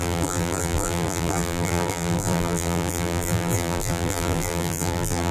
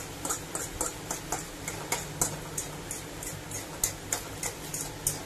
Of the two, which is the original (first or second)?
second